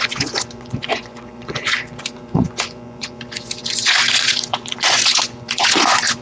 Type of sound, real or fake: fake